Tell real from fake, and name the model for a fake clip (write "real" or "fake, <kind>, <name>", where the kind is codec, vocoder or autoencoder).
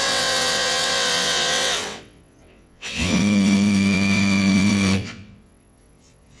fake, vocoder, WaveNeXt